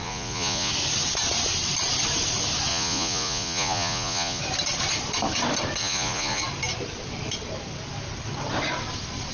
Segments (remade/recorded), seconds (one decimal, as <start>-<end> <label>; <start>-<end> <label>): 0.0-0.7 remade; 0.7-2.7 recorded; 2.7-4.4 remade; 4.4-5.8 recorded; 5.8-6.4 remade; 6.4-9.3 recorded